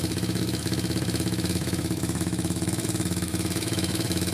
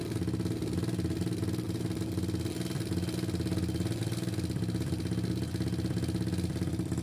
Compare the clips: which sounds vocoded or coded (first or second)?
first